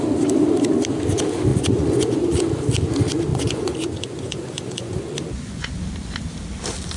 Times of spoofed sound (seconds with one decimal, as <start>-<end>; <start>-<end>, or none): 1.5-2.4; 3.3-5.7